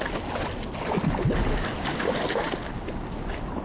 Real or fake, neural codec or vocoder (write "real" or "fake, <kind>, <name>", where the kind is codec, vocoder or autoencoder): real